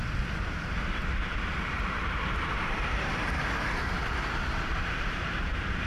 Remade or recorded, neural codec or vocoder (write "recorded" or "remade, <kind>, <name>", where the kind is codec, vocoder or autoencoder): remade, vocoder, BigVGAN v2